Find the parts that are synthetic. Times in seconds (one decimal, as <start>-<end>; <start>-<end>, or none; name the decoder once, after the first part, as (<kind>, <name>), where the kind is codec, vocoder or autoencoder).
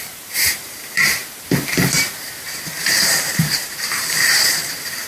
0.0-5.1 (vocoder, BigVGAN v2)